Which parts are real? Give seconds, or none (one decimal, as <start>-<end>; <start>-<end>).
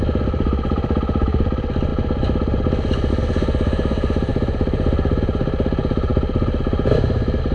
0.0-7.5